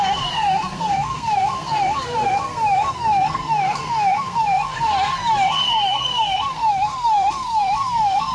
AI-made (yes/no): yes